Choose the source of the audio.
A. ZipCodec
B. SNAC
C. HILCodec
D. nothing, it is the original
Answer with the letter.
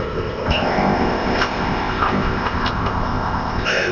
A